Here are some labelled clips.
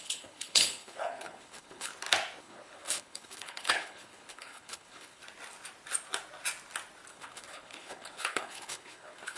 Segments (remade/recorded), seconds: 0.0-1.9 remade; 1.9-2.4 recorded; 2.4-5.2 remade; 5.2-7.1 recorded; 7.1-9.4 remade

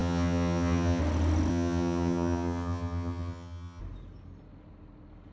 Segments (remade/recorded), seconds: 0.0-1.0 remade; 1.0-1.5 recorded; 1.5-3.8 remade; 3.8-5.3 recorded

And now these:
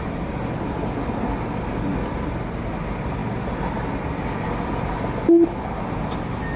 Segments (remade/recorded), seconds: 0.0-6.6 recorded